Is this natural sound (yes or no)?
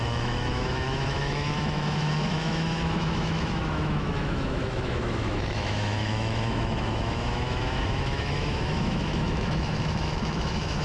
no